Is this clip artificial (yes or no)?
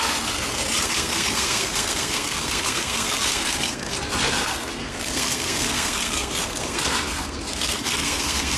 yes